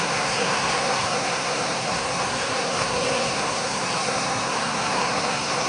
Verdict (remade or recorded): remade